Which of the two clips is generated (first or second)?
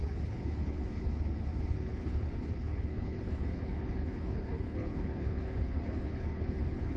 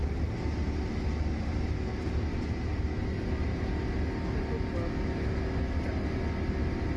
first